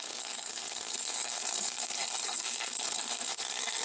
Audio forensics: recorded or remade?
remade